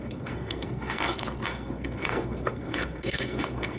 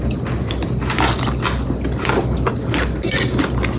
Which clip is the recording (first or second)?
second